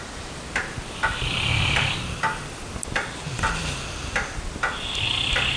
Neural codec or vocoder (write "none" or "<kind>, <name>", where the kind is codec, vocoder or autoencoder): none